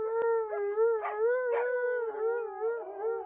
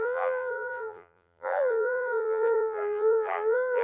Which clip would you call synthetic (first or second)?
second